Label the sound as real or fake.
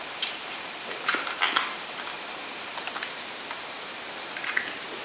real